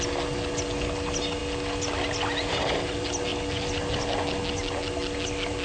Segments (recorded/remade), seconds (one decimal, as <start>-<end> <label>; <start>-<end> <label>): 0.0-5.6 recorded